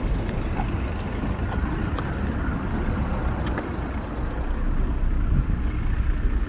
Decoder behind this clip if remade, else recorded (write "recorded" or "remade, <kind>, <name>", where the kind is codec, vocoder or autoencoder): recorded